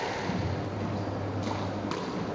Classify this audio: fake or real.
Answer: real